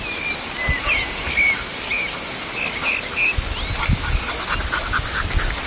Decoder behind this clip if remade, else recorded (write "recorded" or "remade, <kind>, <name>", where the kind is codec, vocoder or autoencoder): recorded